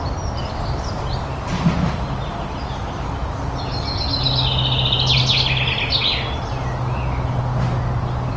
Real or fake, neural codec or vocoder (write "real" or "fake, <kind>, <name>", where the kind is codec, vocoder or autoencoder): real